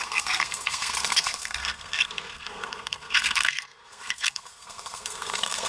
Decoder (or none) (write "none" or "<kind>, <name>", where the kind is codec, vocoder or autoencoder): codec, SNAC